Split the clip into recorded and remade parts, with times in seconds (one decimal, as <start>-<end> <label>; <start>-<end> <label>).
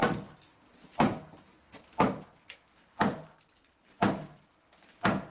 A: 0.0-3.1 recorded; 3.1-4.0 remade; 4.0-5.3 recorded